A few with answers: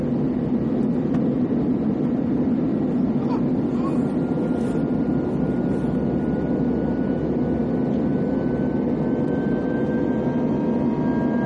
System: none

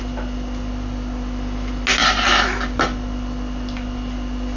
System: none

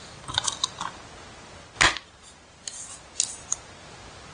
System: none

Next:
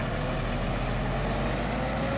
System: none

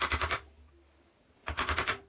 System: none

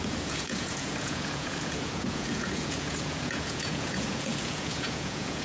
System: vocoder, Vocos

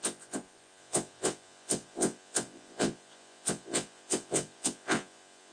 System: vocoder, Vocos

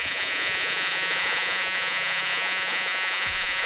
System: vocoder, Vocos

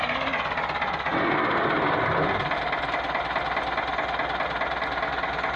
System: none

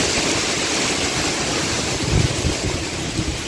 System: none